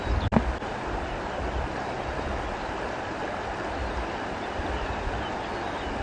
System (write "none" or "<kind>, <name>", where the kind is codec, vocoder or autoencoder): none